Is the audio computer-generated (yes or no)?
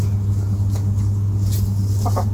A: no